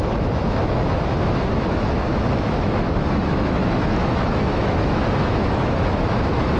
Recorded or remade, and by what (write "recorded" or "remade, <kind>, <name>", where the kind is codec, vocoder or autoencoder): remade, autoencoder, DAC-VAE